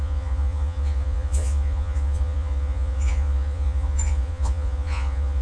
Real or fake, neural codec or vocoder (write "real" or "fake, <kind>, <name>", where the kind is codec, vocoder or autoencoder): fake, vocoder, Vocos